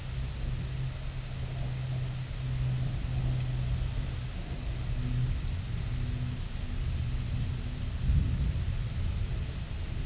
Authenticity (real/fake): real